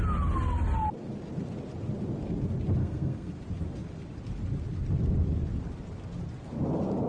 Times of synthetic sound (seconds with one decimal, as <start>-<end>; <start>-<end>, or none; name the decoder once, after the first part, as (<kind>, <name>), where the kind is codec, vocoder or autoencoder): 2.8-3.3 (codec, SNAC)